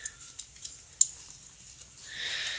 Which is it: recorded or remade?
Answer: recorded